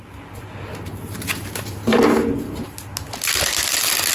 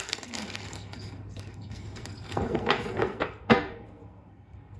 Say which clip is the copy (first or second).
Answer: second